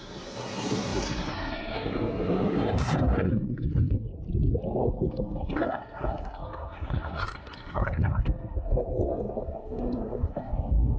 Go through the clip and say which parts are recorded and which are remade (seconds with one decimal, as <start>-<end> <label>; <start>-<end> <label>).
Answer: 0.0-4.1 remade; 4.1-4.8 recorded; 4.8-11.0 remade